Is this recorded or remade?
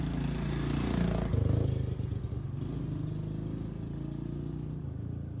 recorded